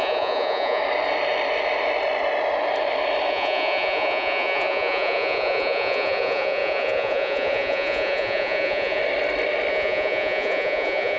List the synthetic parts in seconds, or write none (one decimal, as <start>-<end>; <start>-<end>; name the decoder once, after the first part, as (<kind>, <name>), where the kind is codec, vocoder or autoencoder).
0.0-0.8 (vocoder, Vocos); 3.3-9.0; 9.7-11.2